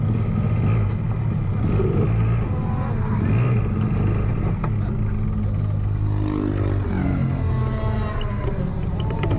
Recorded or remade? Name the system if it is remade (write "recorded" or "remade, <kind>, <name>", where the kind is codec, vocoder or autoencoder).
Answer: recorded